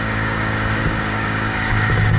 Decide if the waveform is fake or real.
fake